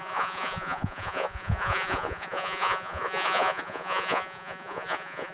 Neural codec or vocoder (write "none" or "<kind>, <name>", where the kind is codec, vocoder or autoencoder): vocoder, Vocos